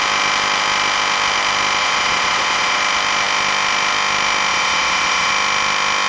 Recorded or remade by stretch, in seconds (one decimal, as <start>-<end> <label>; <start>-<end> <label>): 0.0-1.8 recorded; 1.8-2.8 remade; 2.8-4.5 recorded; 4.5-5.3 remade; 5.3-6.1 recorded